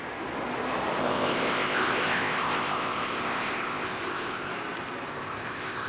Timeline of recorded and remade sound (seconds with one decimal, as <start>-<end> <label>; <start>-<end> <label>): 0.0-1.0 recorded; 1.0-4.5 remade; 4.5-5.1 recorded; 5.1-5.9 remade